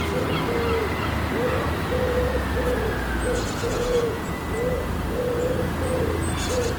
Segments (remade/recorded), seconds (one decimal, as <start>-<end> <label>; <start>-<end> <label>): 0.0-3.6 recorded; 3.6-4.2 remade; 4.2-6.8 recorded